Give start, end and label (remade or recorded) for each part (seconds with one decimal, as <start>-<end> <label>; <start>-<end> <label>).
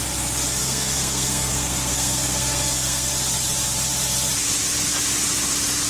0.0-0.6 recorded; 0.6-3.1 remade; 3.1-5.9 recorded